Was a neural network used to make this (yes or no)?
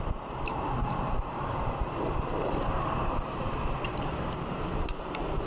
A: yes